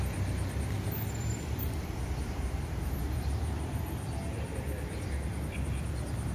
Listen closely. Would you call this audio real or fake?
fake